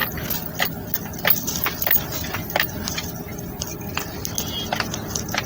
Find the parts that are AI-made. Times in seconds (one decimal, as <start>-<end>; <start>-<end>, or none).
none